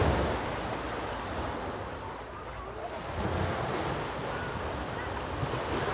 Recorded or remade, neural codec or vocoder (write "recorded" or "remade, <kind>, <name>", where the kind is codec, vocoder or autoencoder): recorded